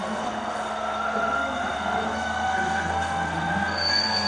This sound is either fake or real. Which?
fake